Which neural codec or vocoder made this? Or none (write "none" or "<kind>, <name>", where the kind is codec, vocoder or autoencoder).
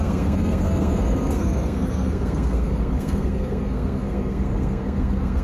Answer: codec, SNAC